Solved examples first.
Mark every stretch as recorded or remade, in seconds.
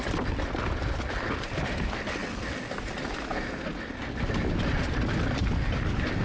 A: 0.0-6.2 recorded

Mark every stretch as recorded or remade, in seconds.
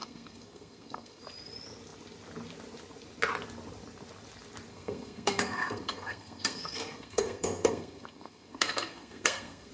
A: 0.0-1.2 remade; 1.2-4.7 recorded; 4.7-9.7 remade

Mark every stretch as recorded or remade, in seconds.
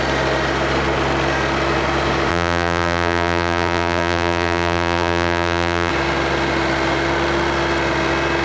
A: 0.0-2.3 recorded; 2.3-5.9 remade; 5.9-8.4 recorded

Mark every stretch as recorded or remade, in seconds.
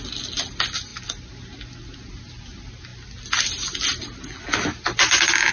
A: 0.0-5.5 recorded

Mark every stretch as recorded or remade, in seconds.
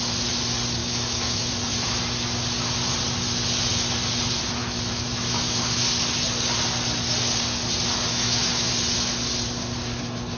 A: 0.0-0.8 recorded; 0.8-1.5 remade; 1.5-4.6 recorded; 4.6-5.6 remade; 5.6-8.1 recorded; 8.1-8.7 remade; 8.7-10.4 recorded